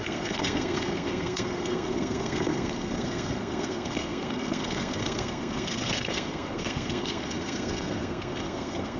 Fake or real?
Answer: fake